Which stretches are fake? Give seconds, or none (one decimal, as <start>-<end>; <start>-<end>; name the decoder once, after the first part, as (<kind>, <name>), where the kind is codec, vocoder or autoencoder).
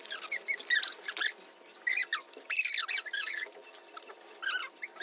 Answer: 3.2-3.8 (vocoder, BigVGAN v2)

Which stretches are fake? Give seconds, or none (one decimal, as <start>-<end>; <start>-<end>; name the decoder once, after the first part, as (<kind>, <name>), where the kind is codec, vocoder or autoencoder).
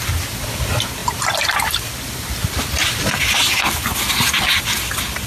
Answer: none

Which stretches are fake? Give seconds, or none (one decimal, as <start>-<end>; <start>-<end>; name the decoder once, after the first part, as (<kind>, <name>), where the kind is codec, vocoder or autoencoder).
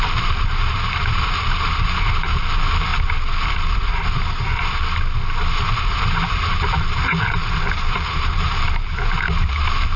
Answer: 0.0-2.9 (vocoder, BigVGAN v2); 5.7-10.0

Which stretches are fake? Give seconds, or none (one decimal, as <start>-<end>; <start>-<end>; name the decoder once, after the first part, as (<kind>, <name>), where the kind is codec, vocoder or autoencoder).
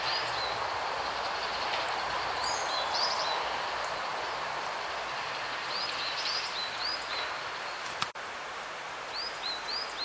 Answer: 0.0-10.0 (vocoder, BigVGAN v2)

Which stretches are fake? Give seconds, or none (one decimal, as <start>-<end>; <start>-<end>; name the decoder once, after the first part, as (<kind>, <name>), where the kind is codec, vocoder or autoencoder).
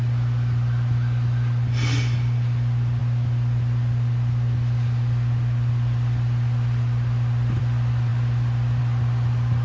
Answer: none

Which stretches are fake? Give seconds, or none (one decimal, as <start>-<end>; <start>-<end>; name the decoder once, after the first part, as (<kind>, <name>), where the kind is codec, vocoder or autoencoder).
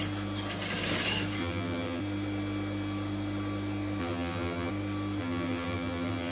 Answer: 1.4-2.0 (vocoder, BigVGAN v2); 4.0-4.7; 5.2-6.3